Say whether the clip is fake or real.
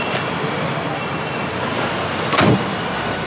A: real